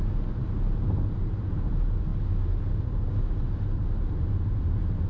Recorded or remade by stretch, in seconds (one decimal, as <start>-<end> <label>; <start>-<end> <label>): 0.0-5.1 recorded